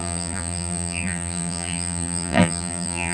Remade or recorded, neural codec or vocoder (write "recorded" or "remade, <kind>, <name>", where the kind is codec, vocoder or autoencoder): remade, vocoder, BigVGAN v2